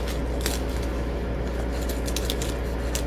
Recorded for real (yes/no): yes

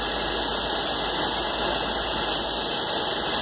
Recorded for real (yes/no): yes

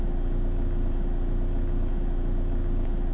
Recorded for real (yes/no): yes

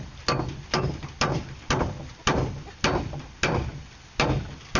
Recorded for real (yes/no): yes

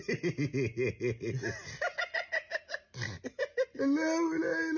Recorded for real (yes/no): yes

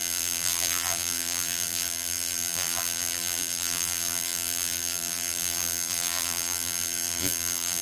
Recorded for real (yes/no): no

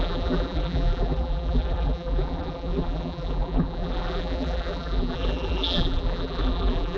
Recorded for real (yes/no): no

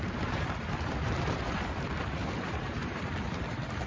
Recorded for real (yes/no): no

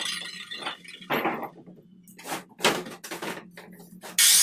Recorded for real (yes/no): yes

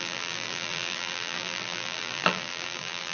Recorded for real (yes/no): no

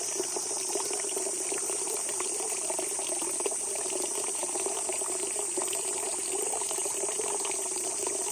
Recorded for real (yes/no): no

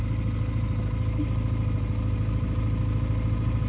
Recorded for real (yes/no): yes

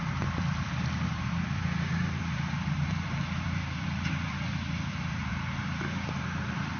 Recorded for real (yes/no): no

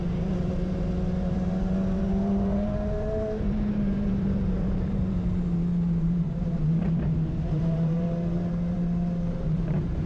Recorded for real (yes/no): no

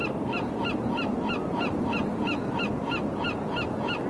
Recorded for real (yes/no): yes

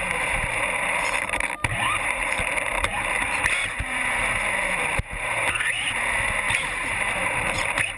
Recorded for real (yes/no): no